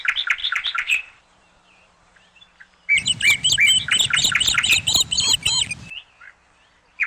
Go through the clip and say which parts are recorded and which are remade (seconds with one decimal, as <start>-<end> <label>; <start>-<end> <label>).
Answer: 0.0-0.4 recorded; 0.4-2.9 remade; 2.9-7.1 recorded